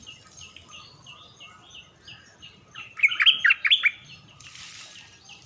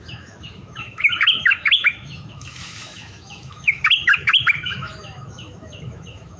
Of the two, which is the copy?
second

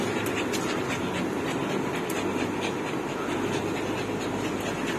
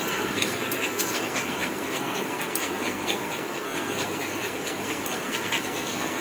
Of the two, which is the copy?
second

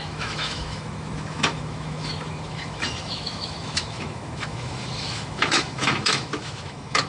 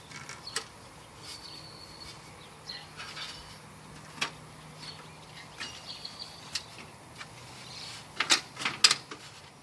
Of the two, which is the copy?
first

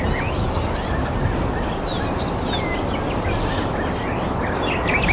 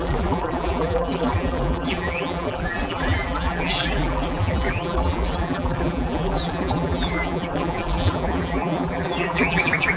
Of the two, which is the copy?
second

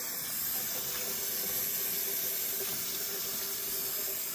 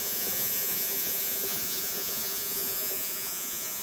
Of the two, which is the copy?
second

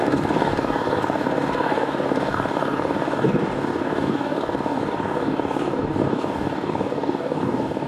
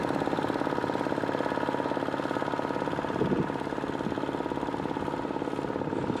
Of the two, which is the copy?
first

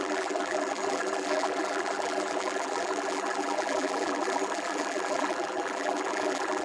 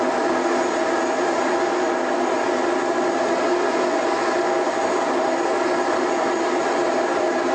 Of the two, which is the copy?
first